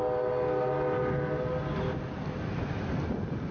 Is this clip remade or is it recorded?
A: recorded